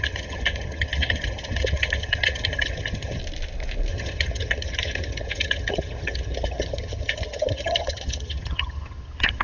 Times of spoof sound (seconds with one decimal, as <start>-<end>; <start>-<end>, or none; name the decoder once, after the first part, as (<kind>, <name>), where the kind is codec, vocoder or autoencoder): 0.0-3.2 (vocoder, HiFi-GAN); 3.9-9.4